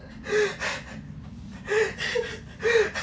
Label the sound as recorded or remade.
recorded